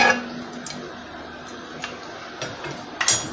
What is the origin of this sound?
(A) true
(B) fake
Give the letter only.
A